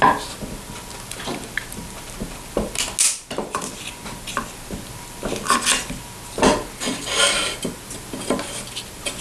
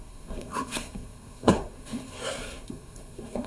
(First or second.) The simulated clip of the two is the second